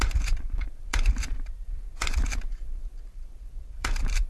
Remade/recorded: remade